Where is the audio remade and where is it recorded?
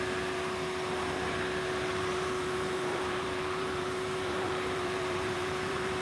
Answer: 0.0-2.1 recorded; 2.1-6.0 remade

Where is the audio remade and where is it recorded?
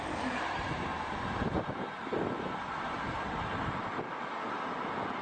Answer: 0.0-0.9 recorded; 0.9-4.0 remade; 4.0-5.2 recorded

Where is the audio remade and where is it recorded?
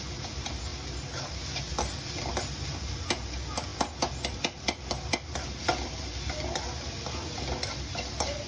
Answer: 0.0-8.5 recorded